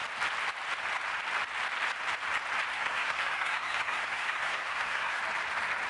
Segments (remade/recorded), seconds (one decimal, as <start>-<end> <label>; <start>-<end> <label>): 0.0-2.7 recorded; 2.7-5.2 remade; 5.2-5.9 recorded

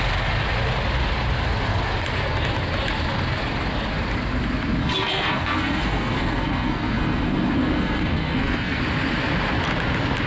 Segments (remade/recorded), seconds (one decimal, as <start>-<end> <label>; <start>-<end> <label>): 0.0-4.8 recorded; 4.8-8.8 remade; 8.8-10.3 recorded

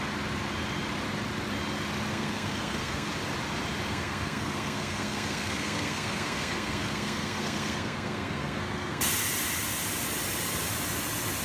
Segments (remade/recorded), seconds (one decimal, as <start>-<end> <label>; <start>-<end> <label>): 0.0-2.1 recorded; 2.1-3.1 remade; 3.1-3.9 recorded; 3.9-9.0 remade; 9.0-11.4 recorded

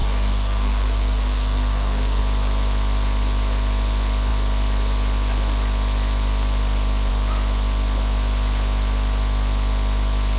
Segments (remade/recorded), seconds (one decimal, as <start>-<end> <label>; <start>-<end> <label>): 0.0-2.2 remade; 2.2-10.4 recorded

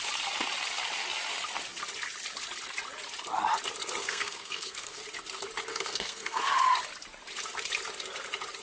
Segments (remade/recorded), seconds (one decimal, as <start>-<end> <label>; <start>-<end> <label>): 0.0-4.0 recorded; 4.0-5.0 remade; 5.0-5.7 recorded; 5.7-6.5 remade; 6.5-8.6 recorded